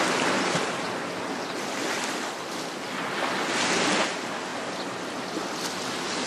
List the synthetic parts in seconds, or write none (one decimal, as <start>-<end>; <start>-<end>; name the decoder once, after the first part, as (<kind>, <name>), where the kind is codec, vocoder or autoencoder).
none